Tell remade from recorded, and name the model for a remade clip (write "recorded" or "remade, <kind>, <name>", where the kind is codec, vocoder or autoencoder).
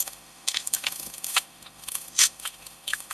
remade, autoencoder, DAC-VAE